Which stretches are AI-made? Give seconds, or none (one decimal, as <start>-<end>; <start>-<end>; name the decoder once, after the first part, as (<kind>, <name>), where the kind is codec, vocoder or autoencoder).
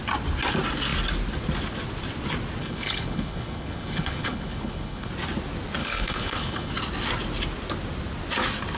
2.6-5.1 (codec, HILCodec); 5.8-6.7